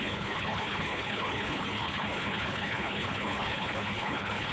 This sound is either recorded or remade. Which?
remade